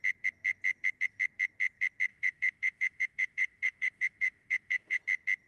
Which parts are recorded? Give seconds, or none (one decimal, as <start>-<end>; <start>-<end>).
0.0-2.1; 5.0-5.5